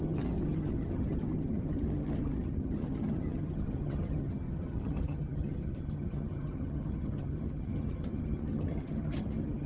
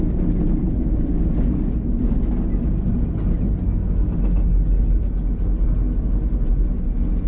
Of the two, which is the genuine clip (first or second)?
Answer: second